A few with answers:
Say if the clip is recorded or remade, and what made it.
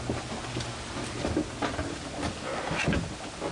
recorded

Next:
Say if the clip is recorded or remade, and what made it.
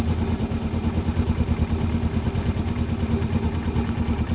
recorded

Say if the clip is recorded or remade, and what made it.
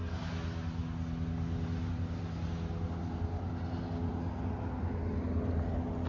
recorded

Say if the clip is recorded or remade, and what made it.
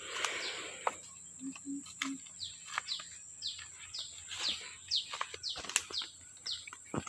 recorded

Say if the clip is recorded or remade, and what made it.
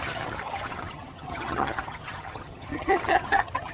remade, vocoder, HiFi-GAN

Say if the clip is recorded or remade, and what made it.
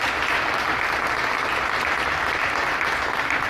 recorded